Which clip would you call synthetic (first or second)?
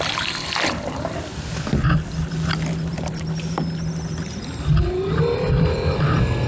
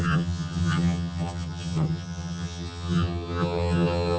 second